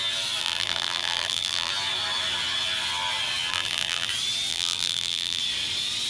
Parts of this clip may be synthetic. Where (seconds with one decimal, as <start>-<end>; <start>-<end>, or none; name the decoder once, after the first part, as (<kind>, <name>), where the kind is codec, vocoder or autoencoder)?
0.4-1.7 (vocoder, BigVGAN v2); 3.5-4.1; 4.5-5.4